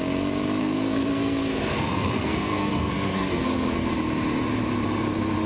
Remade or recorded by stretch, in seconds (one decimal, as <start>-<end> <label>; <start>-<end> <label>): 0.0-0.6 recorded; 0.6-3.9 remade; 3.9-5.5 recorded